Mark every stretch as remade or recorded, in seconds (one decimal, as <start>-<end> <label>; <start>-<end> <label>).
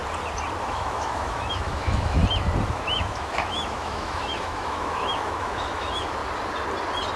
0.0-0.6 recorded; 0.6-2.2 remade; 2.2-2.7 recorded; 2.7-6.2 remade; 6.2-7.2 recorded